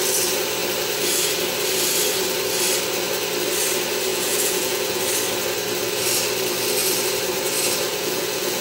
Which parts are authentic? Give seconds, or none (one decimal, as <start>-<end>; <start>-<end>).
0.0-4.1; 5.0-7.9